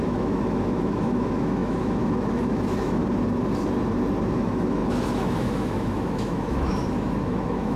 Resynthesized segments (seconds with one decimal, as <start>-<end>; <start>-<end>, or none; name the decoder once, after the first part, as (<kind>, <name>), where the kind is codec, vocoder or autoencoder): 0.0-3.0 (autoencoder, DAC-VAE); 4.3-7.8